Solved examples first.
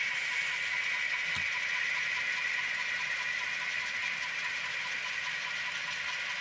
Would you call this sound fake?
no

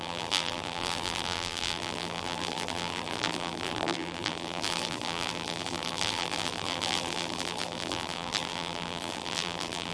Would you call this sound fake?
yes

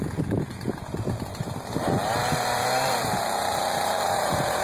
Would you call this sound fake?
yes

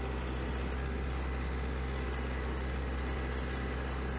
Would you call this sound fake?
no